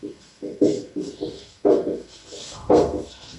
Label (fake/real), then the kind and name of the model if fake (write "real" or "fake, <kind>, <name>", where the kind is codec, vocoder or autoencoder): fake, codec, SNAC